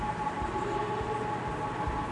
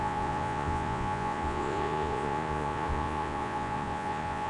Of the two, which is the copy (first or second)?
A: second